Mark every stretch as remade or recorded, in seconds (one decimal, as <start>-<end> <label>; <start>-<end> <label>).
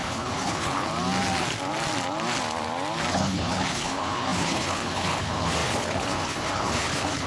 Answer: 0.0-0.9 remade; 0.9-3.1 recorded; 3.1-7.3 remade